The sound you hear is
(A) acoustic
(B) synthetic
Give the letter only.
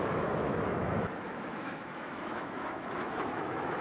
B